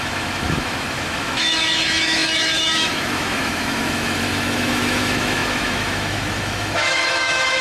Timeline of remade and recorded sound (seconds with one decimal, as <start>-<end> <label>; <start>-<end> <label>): 0.0-7.6 remade

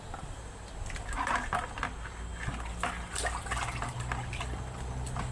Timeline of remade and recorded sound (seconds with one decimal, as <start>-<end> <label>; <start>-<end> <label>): 0.0-5.3 recorded

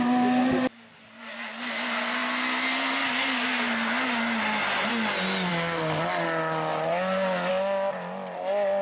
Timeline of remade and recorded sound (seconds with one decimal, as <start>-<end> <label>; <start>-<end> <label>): 0.0-8.8 recorded

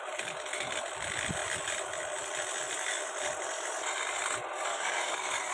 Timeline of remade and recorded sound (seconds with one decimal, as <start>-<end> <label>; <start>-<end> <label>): 0.0-4.7 recorded; 4.7-5.5 remade